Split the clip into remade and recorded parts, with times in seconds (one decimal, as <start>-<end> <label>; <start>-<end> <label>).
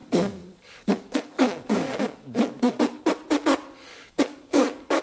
0.0-3.0 remade; 3.0-3.9 recorded; 3.9-5.0 remade